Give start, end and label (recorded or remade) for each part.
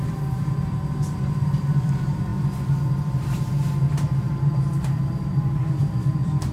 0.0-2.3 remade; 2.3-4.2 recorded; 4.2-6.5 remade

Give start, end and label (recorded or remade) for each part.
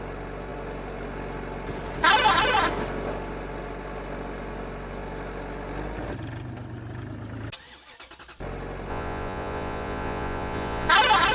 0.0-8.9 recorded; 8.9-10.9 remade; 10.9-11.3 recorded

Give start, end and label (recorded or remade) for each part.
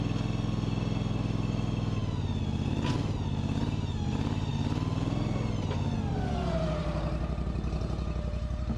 0.0-8.8 recorded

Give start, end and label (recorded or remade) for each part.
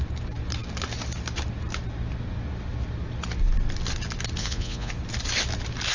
0.0-4.4 recorded; 4.4-4.9 remade; 4.9-5.9 recorded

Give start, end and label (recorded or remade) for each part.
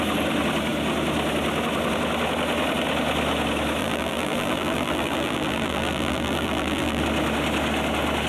0.0-3.8 recorded; 3.8-7.0 remade; 7.0-8.3 recorded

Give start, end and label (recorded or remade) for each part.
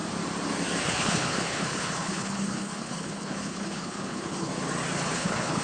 0.0-0.8 recorded; 0.8-4.5 remade; 4.5-5.1 recorded; 5.1-5.6 remade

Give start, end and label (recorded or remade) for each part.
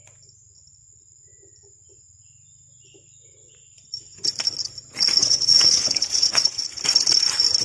0.0-5.2 recorded; 5.2-6.6 remade; 6.6-7.6 recorded